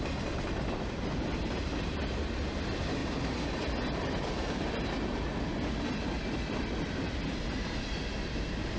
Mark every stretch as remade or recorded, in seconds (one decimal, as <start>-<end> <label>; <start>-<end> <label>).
0.0-3.0 recorded; 3.0-4.9 remade; 4.9-8.8 recorded